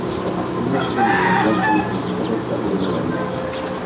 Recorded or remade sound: recorded